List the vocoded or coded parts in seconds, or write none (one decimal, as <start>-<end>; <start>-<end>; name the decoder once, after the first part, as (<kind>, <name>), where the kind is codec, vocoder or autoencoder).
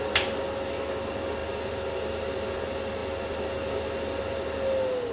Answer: none